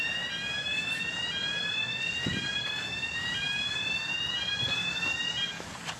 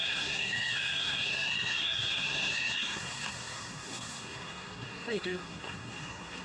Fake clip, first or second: second